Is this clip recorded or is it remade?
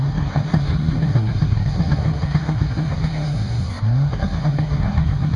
remade